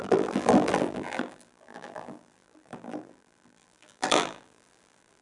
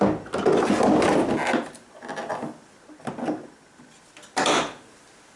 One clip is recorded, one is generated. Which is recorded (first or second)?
second